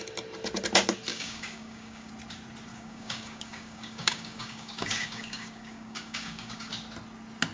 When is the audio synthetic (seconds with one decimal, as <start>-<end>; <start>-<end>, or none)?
1.1-2.1; 2.7-6.7